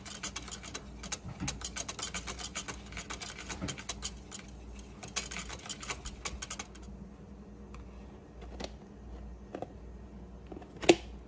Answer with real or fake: real